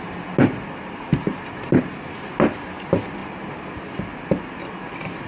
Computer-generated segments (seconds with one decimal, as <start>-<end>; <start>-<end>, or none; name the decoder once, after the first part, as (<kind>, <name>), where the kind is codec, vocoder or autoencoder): none